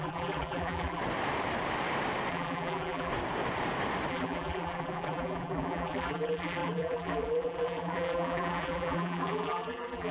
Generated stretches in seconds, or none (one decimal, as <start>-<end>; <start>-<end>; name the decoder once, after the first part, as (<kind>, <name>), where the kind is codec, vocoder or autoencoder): 0.0-1.0 (vocoder, BigVGAN v2); 2.3-3.1; 4.1-10.1